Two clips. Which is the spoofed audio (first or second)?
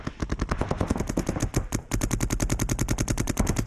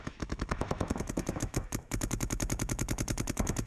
second